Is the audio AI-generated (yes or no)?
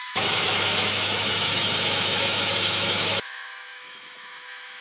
yes